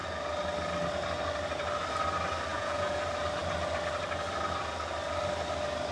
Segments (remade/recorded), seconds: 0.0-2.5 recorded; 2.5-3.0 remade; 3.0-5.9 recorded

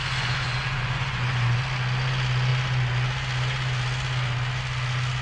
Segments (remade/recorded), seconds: 0.0-1.6 remade; 1.6-5.2 recorded

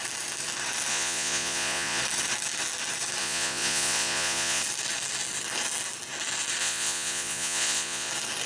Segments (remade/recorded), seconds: 0.0-0.9 recorded; 0.9-2.0 remade; 2.0-3.2 recorded; 3.2-4.6 remade; 4.6-6.6 recorded; 6.6-8.1 remade; 8.1-8.5 recorded